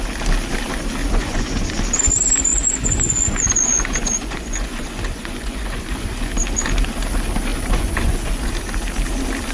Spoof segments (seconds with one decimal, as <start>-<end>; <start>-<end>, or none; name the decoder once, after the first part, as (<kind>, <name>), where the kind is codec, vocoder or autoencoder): 1.0-1.6 (vocoder, Vocos); 2.5-6.3; 7.5-8.5